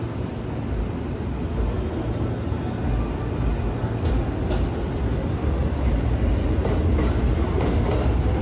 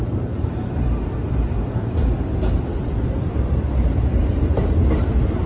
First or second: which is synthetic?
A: second